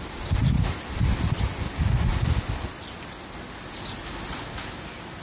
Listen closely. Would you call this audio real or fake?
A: real